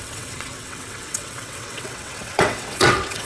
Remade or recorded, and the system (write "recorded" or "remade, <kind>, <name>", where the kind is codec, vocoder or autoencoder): remade, vocoder, WaveNeXt